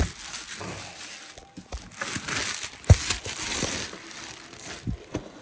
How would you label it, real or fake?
real